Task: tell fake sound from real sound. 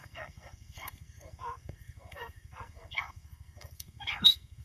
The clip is fake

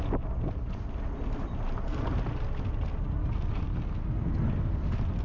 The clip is real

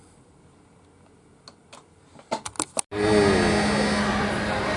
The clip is real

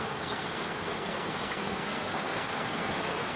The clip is fake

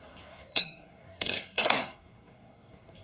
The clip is fake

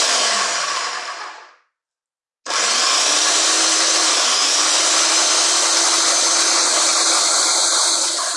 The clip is real